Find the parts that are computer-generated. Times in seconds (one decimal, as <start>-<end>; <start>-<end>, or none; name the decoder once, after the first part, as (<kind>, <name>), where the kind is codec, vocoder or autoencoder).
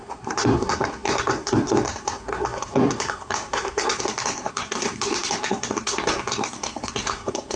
0.0-7.6 (codec, SNAC)